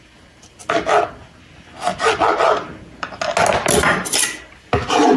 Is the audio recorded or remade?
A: recorded